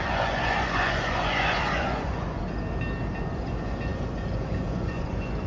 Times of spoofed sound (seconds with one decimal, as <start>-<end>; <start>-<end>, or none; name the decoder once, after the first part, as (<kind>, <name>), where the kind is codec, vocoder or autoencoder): 0.0-2.4 (vocoder, Vocos); 3.2-5.5